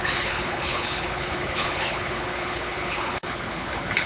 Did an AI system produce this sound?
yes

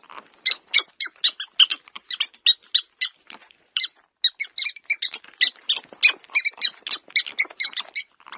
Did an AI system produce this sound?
no